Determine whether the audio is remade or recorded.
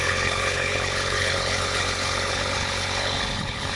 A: remade